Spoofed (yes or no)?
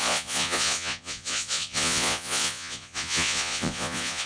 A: yes